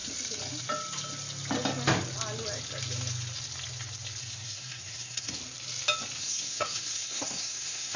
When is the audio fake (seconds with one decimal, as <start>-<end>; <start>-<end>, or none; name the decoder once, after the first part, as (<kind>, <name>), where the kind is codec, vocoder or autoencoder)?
4.2-5.4 (codec, SNAC); 6.2-8.0